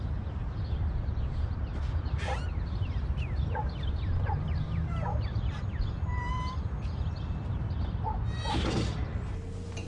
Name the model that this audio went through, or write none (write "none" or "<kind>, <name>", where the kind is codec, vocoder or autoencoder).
vocoder, BigVGAN v2